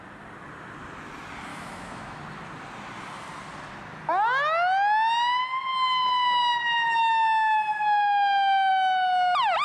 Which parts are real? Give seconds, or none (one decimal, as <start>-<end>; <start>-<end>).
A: 0.0-1.5; 2.2-9.6

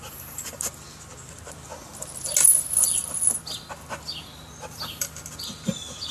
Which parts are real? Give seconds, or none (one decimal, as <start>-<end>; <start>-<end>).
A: 0.0-6.1